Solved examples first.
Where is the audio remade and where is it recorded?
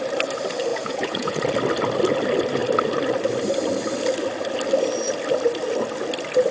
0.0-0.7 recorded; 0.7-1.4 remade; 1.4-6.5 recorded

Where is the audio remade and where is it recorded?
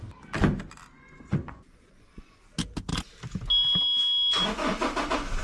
0.0-0.9 recorded; 0.9-2.5 remade; 2.5-5.4 recorded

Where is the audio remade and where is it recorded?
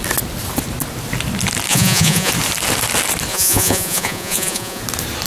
0.0-1.7 recorded; 1.7-2.3 remade; 2.3-3.3 recorded; 3.3-4.8 remade; 4.8-5.3 recorded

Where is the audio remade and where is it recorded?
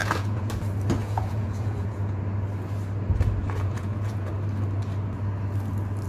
0.0-0.5 remade; 0.5-1.0 recorded; 1.0-2.2 remade; 2.2-3.4 recorded; 3.4-4.3 remade; 4.3-6.1 recorded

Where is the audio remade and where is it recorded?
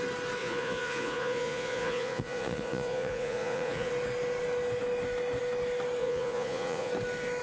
0.0-0.4 recorded; 0.4-3.9 remade; 3.9-6.0 recorded; 6.0-6.9 remade; 6.9-7.4 recorded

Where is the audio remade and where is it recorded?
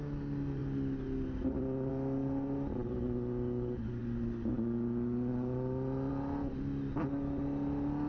0.0-8.1 recorded